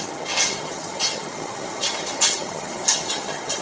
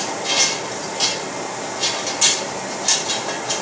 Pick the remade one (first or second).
first